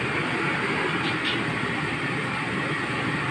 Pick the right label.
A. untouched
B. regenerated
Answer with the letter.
A